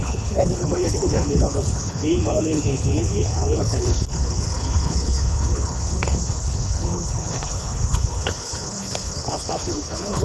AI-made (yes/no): yes